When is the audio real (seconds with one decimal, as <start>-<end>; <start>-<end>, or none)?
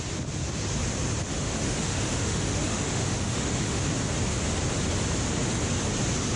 0.0-1.3; 3.9-6.4